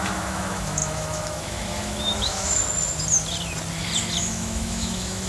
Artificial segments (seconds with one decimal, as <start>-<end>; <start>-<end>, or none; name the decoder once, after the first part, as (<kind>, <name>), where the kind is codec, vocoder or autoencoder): 0.0-2.6 (autoencoder, DAC-VAE); 4.2-5.3